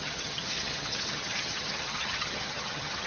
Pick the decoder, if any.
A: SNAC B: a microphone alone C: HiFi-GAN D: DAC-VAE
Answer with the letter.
C